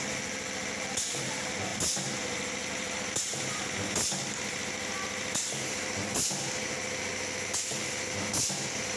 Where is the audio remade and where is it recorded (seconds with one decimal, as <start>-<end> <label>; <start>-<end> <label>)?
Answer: 0.0-9.0 recorded